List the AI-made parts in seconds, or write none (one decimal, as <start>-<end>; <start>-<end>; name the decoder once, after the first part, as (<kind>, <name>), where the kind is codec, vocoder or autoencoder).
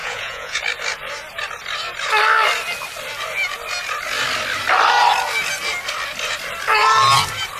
0.0-0.6 (vocoder, Vocos)